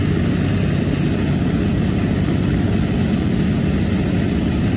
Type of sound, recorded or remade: recorded